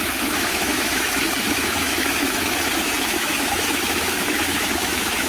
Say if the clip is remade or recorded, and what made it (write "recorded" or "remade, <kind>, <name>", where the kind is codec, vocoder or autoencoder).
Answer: remade, autoencoder, DAC-VAE